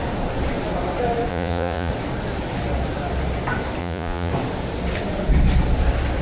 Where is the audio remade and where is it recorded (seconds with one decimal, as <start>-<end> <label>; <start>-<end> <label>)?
0.0-1.3 recorded; 1.3-1.9 remade; 1.9-3.8 recorded; 3.8-4.3 remade; 4.3-6.2 recorded